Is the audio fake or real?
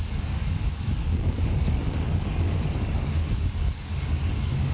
fake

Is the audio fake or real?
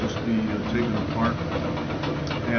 real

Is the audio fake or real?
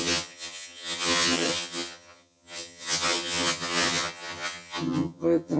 fake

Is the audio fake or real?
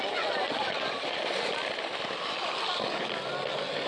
real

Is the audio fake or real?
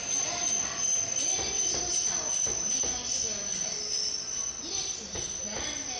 real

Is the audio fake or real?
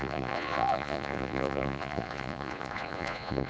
fake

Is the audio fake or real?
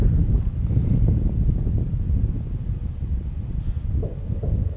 real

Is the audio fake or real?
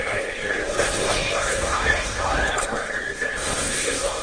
fake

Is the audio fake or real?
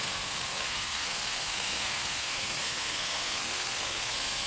fake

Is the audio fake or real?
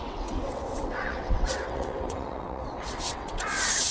fake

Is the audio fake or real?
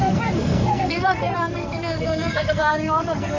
fake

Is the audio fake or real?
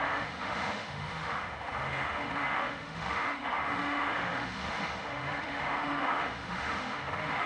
fake